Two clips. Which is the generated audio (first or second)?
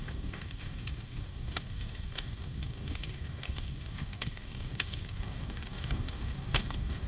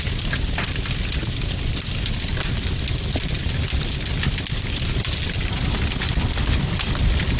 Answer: first